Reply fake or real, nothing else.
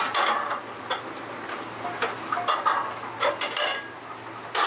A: real